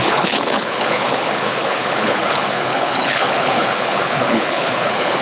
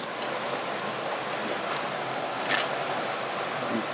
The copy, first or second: first